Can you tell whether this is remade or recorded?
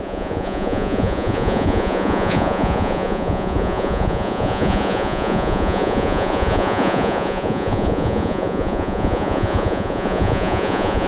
remade